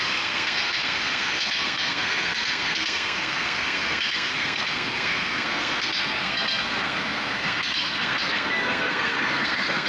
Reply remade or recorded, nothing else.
remade